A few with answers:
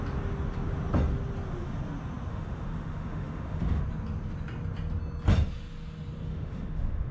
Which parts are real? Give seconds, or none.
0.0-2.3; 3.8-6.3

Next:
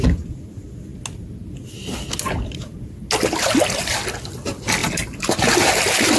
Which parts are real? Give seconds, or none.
0.0-6.2

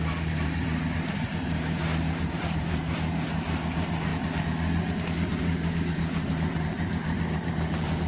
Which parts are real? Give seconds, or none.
4.1-5.4

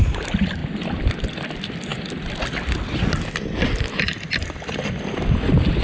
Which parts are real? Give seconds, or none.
1.9-5.3

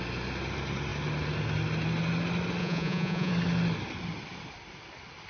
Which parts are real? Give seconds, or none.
0.0-2.6; 3.3-5.3

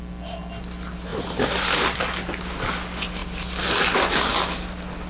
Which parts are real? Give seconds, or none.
0.0-1.1; 2.0-5.1

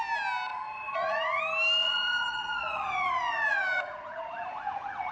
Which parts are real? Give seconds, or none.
0.0-0.5; 1.4-1.8

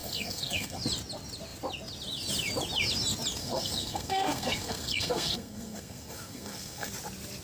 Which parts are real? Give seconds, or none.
0.8-3.4; 6.9-7.4